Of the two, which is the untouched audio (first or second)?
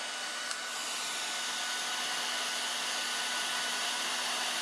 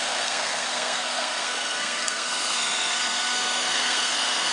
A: first